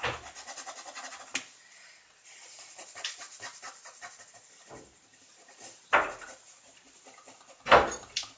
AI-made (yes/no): no